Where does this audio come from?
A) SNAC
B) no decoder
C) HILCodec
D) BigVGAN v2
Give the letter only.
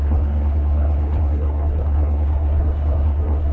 A